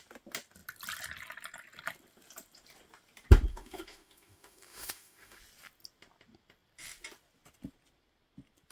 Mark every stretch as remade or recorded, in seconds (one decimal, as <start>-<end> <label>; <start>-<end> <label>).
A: 0.0-3.5 recorded; 3.5-5.4 remade; 5.4-8.7 recorded